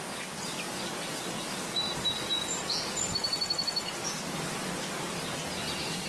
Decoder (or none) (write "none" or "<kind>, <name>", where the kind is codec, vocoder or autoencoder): none